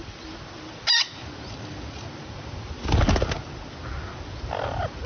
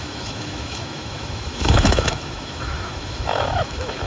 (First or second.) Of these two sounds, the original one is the first